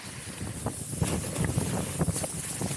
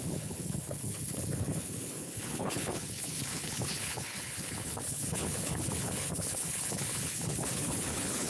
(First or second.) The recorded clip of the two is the first